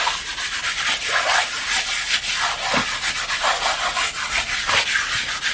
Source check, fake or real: fake